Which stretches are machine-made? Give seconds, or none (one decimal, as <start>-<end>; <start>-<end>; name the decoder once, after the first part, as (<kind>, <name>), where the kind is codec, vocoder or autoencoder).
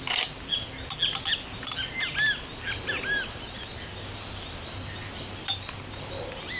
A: none